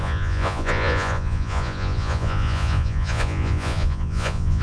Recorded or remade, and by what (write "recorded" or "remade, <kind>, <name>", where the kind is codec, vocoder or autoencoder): remade, vocoder, Vocos